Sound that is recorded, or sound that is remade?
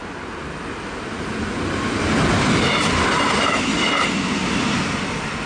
recorded